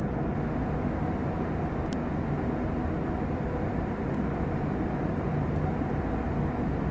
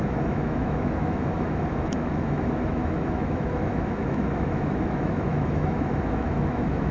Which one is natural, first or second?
first